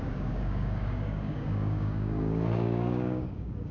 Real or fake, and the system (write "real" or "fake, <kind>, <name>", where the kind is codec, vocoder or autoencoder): fake, codec, DAC